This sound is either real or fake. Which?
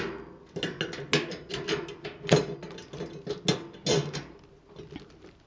real